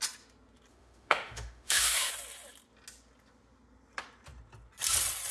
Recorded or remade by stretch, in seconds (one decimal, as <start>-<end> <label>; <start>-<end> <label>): 0.0-0.7 recorded; 0.7-2.1 remade; 2.1-5.3 recorded